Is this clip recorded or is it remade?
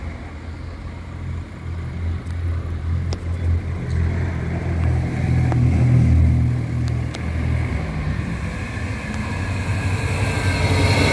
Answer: recorded